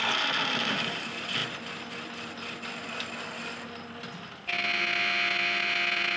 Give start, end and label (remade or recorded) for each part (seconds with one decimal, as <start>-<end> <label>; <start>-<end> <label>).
0.0-6.2 recorded